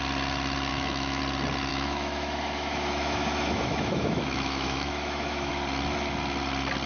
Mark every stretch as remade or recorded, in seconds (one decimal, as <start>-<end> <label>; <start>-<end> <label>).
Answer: 0.0-0.7 recorded; 0.7-1.2 remade; 1.2-1.7 recorded; 1.7-5.5 remade; 5.5-6.9 recorded

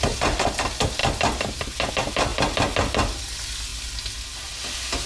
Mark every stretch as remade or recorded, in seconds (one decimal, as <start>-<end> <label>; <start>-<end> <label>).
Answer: 0.0-5.1 recorded

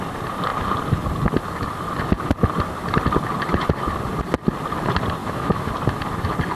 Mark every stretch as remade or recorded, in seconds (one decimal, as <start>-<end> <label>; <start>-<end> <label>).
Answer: 0.0-5.2 recorded; 5.2-5.7 remade; 5.7-6.6 recorded

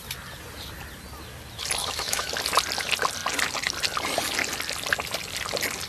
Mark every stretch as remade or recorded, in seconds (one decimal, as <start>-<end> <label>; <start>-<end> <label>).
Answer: 0.0-1.8 recorded; 1.8-2.3 remade; 2.3-5.9 recorded

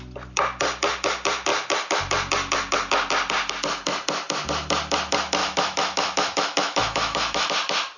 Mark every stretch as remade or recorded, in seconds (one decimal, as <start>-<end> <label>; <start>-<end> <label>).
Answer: 0.0-5.4 recorded; 5.4-7.5 remade; 7.5-8.0 recorded